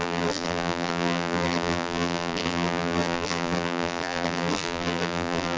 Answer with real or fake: fake